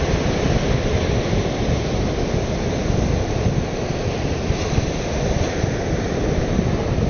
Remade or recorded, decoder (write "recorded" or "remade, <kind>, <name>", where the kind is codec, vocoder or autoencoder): recorded